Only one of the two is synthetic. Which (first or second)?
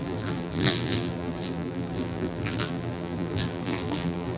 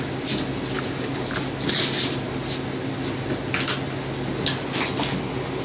first